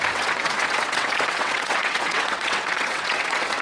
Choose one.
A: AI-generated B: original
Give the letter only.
A